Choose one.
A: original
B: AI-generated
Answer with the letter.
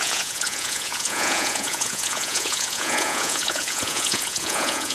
B